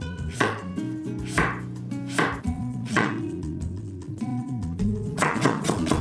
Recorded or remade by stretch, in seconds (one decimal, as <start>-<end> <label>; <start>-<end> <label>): 0.0-0.7 remade; 0.7-2.4 recorded; 2.4-6.0 remade